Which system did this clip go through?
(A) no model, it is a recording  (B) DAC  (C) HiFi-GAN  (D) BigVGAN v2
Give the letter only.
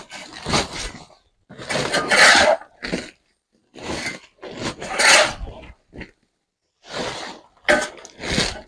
A